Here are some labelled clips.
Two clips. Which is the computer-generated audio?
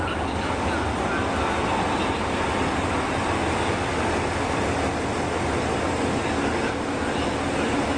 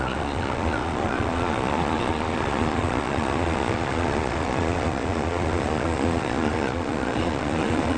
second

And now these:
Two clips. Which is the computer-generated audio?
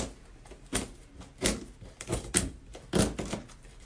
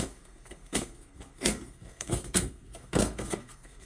second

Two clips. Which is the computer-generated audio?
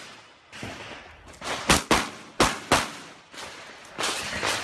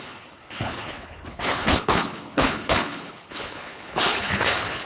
second